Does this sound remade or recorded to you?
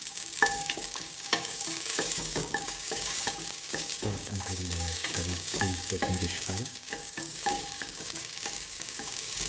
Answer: remade